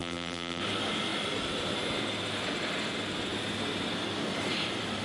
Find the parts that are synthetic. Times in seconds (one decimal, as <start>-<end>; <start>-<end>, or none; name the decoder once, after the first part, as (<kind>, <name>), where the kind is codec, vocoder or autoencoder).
0.0-0.6 (vocoder, BigVGAN v2)